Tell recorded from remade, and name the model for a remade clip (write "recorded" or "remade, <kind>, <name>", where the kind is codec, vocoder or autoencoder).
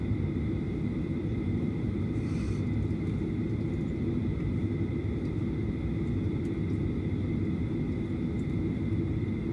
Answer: recorded